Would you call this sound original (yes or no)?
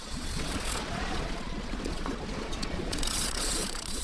no